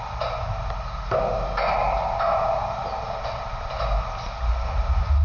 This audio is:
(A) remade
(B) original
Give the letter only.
B